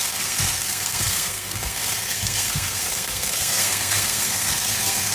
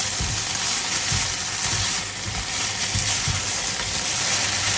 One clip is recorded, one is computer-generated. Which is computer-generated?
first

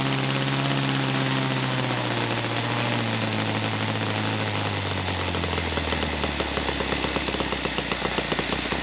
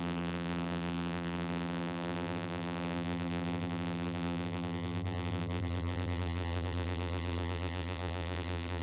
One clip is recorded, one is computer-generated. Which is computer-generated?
second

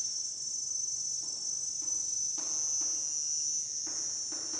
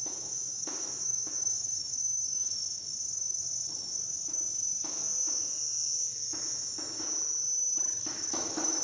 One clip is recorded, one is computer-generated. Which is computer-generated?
second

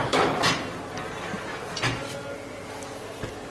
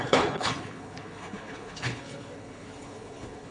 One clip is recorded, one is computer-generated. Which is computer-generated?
second